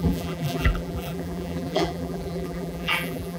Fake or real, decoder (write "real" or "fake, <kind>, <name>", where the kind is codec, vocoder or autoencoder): fake, vocoder, BigVGAN v2